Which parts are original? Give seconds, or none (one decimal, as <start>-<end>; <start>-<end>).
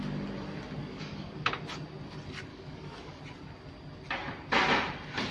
0.0-0.8; 1.5-2.5; 3.2-5.3